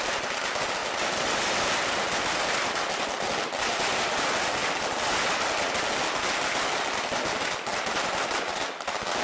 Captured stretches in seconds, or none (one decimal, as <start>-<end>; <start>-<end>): 0.0-0.8; 1.4-7.7; 8.6-9.2